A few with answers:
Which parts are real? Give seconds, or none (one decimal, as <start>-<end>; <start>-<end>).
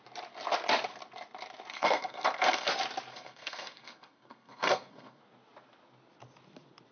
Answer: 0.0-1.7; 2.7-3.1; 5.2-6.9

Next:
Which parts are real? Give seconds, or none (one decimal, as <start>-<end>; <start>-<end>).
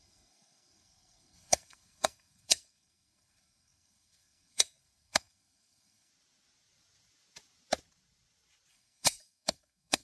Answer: 6.1-8.7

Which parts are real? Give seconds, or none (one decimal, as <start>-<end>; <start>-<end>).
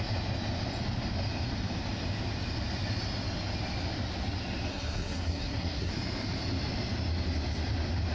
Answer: 0.0-4.7; 5.9-8.1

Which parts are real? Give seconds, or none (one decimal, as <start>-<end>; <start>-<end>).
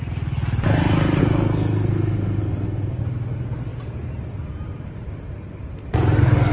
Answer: 0.0-1.2; 3.0-6.5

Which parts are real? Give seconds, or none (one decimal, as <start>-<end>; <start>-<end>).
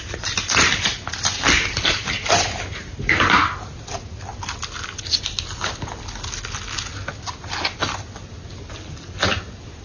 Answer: 0.0-9.8